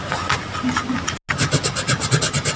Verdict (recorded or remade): recorded